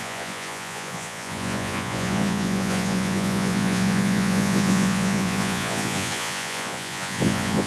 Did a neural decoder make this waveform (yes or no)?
yes